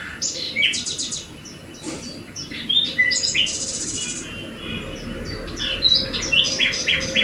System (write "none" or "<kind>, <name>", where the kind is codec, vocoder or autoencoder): none